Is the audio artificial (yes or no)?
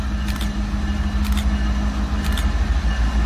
no